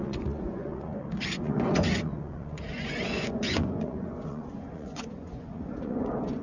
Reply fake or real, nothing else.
fake